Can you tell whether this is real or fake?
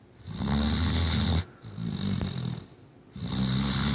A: real